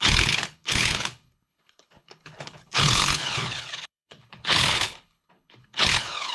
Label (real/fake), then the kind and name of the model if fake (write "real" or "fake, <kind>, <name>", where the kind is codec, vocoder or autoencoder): fake, codec, HILCodec